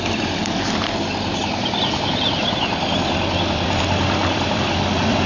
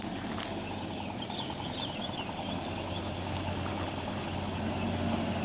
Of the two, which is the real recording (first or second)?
second